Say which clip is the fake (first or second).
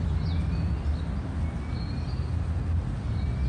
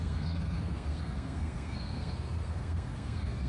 second